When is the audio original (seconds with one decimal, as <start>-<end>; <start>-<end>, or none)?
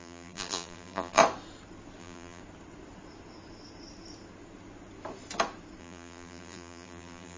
1.2-2.0; 2.4-5.8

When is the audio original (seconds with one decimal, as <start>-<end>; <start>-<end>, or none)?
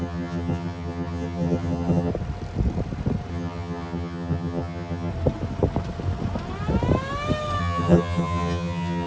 2.1-3.3; 5.1-7.6